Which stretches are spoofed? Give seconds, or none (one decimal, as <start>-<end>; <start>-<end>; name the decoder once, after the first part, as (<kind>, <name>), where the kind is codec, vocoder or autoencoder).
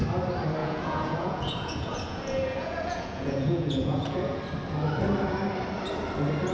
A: 0.6-4.4 (vocoder, Vocos)